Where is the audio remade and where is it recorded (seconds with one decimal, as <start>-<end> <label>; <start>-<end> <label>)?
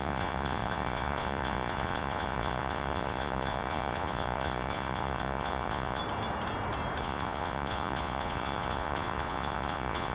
0.0-6.0 remade; 6.0-7.0 recorded; 7.0-10.1 remade